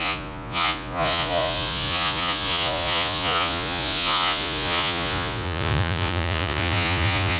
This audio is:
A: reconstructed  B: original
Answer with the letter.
A